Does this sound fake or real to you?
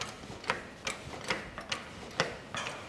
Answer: real